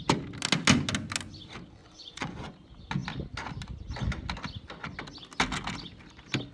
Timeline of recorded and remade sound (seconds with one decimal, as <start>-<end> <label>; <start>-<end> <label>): 0.0-1.8 recorded; 1.8-2.5 remade; 2.5-6.5 recorded